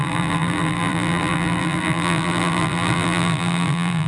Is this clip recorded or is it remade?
remade